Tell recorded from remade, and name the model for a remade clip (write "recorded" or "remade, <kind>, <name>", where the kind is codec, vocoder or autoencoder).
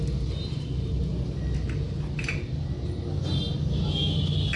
recorded